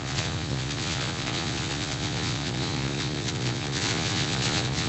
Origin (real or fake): fake